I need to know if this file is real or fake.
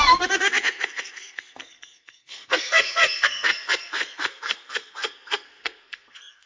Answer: fake